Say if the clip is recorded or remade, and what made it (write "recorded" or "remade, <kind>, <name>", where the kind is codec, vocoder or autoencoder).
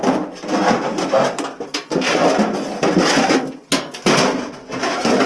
recorded